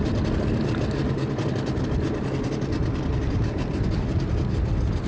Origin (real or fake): real